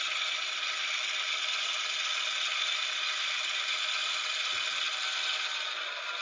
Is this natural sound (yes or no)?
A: yes